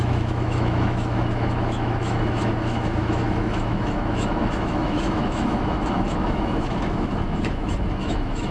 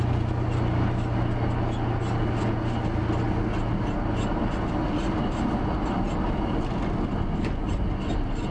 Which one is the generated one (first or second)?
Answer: first